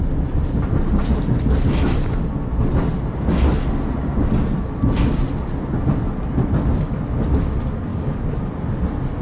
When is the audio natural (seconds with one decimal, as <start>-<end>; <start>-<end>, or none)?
0.0-7.9; 8.4-9.2